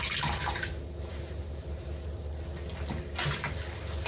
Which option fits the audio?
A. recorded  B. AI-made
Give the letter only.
A